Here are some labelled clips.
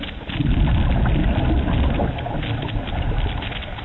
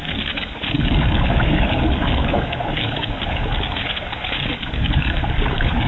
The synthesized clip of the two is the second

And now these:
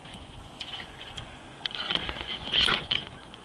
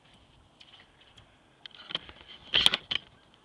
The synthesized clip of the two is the first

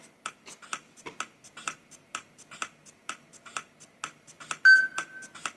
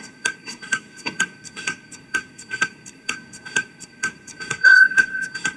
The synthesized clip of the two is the second